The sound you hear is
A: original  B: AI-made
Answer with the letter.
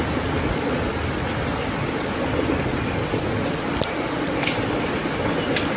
A